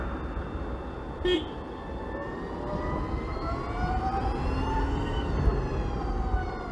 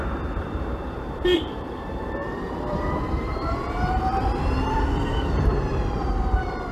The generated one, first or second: second